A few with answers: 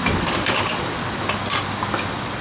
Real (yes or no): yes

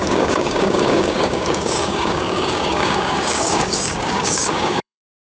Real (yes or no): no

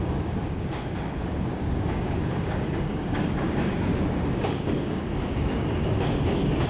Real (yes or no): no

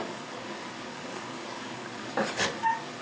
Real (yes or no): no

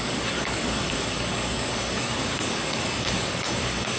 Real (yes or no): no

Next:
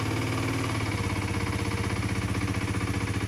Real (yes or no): yes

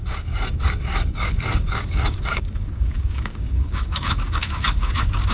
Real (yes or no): no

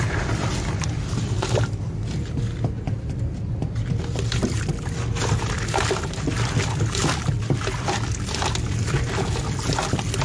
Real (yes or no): yes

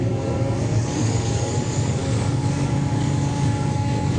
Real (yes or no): no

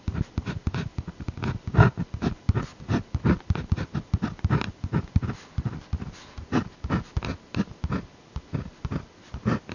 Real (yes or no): yes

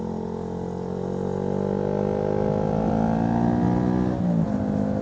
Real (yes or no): yes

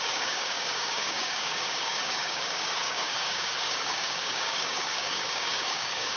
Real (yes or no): no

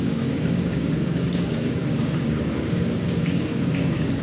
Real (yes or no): no